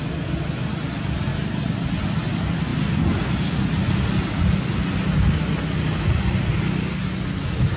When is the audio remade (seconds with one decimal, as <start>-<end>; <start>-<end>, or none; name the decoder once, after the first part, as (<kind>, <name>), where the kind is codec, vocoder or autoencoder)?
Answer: none